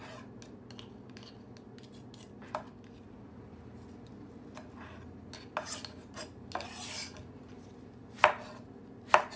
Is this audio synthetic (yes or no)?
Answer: no